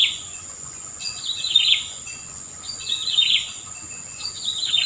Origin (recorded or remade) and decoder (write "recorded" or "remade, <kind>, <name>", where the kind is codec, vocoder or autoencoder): remade, vocoder, Vocos